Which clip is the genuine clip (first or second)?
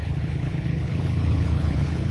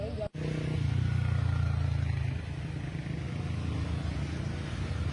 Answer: second